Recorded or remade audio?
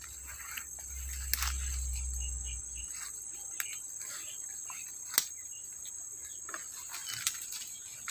recorded